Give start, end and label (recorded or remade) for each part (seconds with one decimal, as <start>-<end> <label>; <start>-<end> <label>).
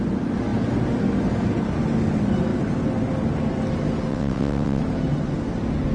0.0-4.1 recorded; 4.1-4.8 remade; 4.8-5.9 recorded